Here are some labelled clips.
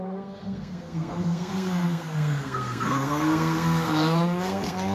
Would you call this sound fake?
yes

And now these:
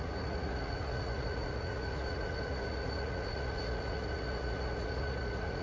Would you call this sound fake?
yes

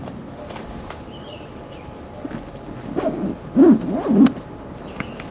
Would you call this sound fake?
no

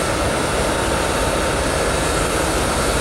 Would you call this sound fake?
no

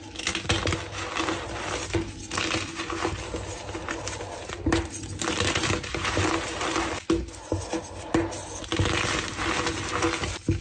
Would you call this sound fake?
no